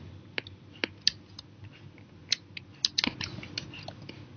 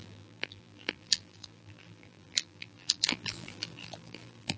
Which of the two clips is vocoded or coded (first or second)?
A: second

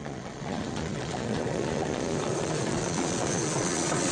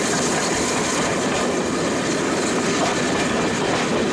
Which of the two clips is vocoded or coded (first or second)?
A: first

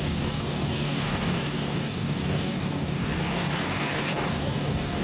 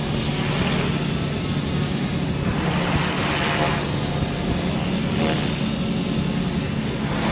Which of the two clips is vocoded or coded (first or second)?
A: first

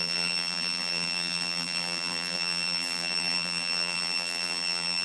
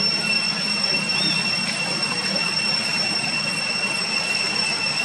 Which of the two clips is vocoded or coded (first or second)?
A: first